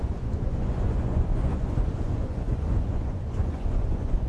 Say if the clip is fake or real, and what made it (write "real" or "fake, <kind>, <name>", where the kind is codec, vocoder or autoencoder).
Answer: fake, vocoder, Vocos